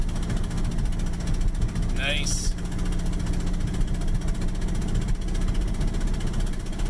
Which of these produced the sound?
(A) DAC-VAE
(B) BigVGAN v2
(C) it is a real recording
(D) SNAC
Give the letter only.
C